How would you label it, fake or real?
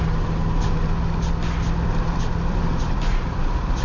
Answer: real